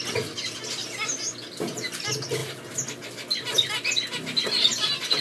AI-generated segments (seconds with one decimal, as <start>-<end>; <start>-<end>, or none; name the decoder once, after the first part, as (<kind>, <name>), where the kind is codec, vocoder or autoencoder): none